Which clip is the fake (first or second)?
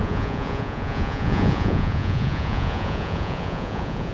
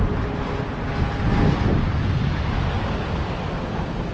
first